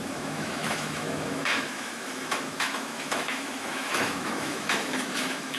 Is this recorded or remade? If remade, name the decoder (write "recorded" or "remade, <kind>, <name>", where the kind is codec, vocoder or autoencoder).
remade, autoencoder, DAC-VAE